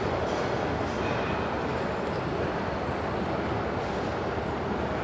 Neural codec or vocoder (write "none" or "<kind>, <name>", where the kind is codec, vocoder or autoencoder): vocoder, BigVGAN v2